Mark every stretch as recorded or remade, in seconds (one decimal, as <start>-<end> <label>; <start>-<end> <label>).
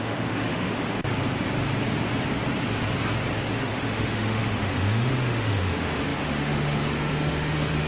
0.0-0.8 remade; 0.8-3.5 recorded; 3.5-7.9 remade